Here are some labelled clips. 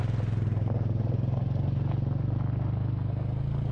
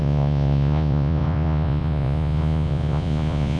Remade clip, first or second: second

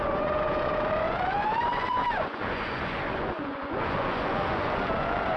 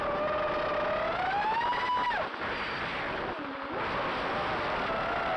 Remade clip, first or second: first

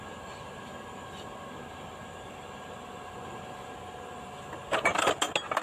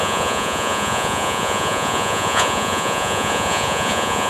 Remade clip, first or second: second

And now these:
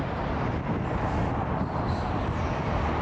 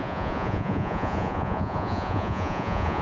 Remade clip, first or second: second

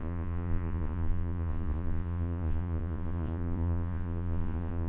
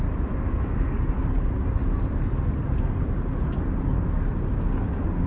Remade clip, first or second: first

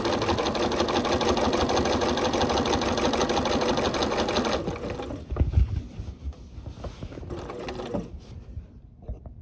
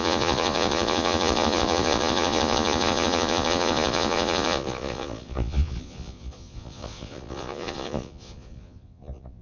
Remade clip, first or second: second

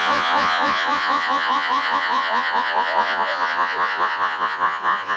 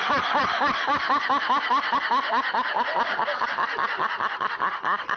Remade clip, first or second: first